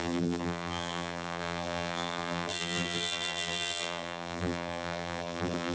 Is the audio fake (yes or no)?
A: yes